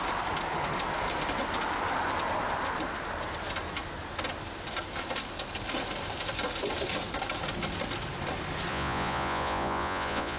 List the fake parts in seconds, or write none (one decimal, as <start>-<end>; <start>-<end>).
8.7-10.4